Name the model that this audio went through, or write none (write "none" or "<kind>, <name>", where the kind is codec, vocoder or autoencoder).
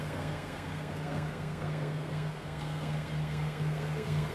codec, SNAC